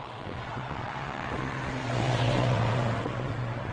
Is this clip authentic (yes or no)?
no